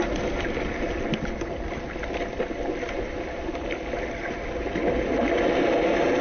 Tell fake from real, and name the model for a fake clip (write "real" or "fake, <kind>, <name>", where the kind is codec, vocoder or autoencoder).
real